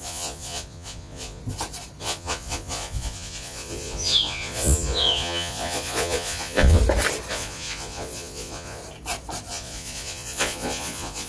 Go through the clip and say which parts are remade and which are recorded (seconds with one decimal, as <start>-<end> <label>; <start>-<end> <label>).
0.0-1.4 remade; 1.4-2.0 recorded; 2.0-6.8 remade; 6.8-7.3 recorded; 7.3-8.8 remade; 8.8-9.5 recorded; 9.5-11.3 remade